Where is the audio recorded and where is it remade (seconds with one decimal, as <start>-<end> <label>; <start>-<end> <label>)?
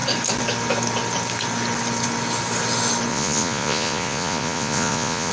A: 0.0-3.1 recorded; 3.1-5.3 remade